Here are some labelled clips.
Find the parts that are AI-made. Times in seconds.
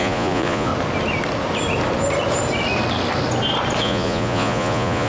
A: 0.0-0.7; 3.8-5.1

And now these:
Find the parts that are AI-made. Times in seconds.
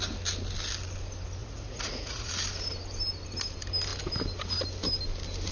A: 1.4-2.3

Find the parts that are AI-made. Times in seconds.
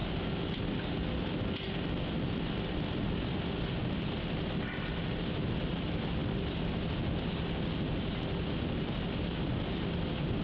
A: none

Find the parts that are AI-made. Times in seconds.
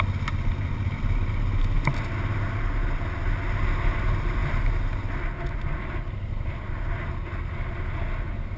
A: none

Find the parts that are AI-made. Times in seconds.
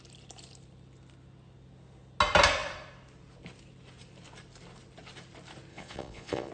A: 5.7-6.5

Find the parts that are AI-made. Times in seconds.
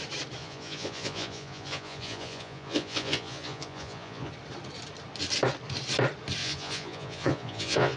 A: 0.4-4.3; 6.4-8.0